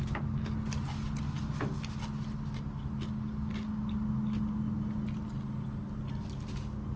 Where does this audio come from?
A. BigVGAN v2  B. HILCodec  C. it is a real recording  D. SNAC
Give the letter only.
C